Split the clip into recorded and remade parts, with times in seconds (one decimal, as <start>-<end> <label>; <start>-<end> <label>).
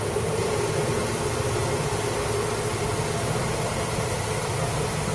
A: 0.0-1.0 remade; 1.0-3.7 recorded; 3.7-5.1 remade